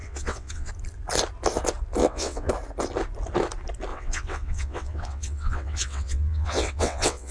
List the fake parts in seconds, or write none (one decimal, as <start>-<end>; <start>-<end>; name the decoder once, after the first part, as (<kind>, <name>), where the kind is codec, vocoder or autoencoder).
0.0-0.7 (vocoder, WaveNeXt); 2.0-2.5; 3.9-7.3